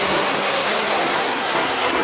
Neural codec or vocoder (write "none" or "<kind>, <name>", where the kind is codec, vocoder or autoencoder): codec, SNAC